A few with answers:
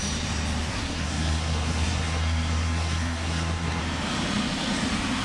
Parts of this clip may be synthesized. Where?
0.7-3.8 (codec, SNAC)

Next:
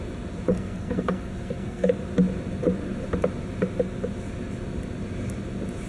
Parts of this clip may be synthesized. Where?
0.5-1.9 (codec, SNAC)